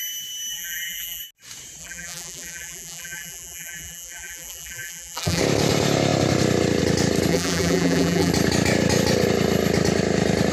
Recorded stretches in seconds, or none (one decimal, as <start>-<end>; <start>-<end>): 0.0-0.5; 1.2-1.8; 5.4-7.3; 8.3-10.5